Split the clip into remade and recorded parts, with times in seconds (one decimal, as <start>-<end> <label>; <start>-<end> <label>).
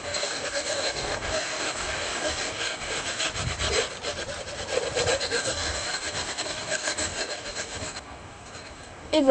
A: 0.0-3.3 remade; 3.3-5.2 recorded; 5.2-9.3 remade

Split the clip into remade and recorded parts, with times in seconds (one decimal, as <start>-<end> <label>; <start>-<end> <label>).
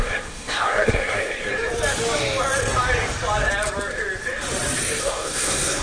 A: 0.0-1.5 remade; 1.5-5.0 recorded; 5.0-5.8 remade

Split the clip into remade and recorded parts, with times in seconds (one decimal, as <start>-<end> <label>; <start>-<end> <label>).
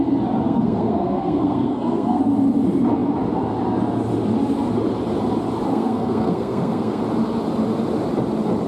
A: 0.0-0.4 recorded; 0.4-2.2 remade; 2.2-5.7 recorded; 5.7-7.0 remade; 7.0-8.7 recorded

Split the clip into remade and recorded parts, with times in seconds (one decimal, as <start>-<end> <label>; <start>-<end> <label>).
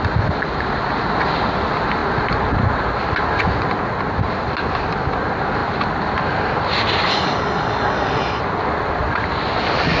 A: 0.0-7.1 recorded; 7.1-8.4 remade; 8.4-10.0 recorded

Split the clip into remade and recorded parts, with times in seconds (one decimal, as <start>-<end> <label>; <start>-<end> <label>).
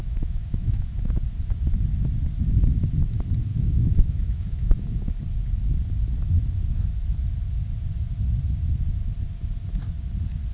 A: 0.0-0.9 remade; 0.9-3.5 recorded; 3.5-5.1 remade; 5.1-10.5 recorded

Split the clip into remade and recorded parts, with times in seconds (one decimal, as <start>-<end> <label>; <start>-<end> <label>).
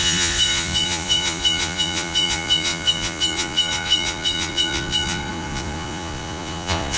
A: 0.0-7.0 remade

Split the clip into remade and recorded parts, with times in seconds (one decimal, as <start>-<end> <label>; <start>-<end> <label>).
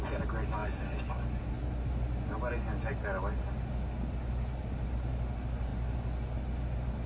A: 0.0-7.1 recorded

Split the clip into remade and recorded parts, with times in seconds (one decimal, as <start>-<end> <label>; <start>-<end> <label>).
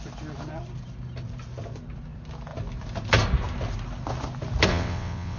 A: 0.0-4.7 recorded; 4.7-5.4 remade